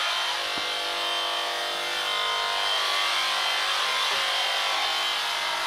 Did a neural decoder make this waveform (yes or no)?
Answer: no